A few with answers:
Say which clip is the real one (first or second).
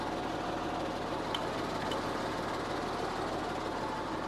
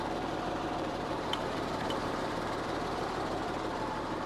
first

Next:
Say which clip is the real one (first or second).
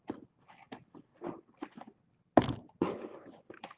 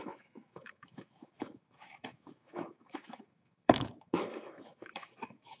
first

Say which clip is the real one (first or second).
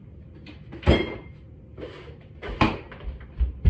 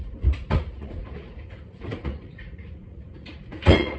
first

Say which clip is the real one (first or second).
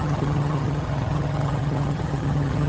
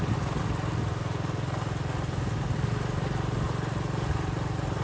second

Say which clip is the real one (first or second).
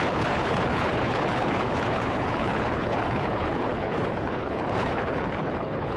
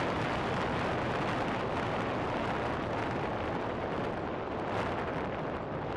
second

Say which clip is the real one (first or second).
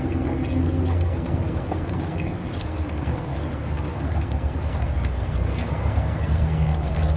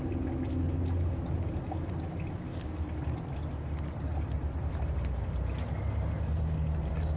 second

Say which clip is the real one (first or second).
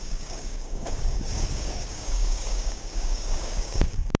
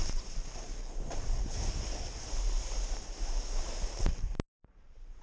second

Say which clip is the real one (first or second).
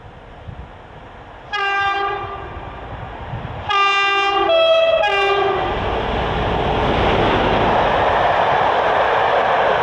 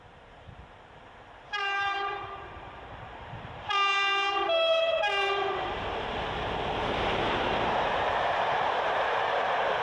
first